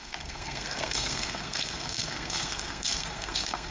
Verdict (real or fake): fake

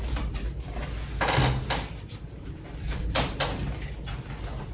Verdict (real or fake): real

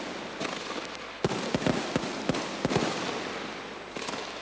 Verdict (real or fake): real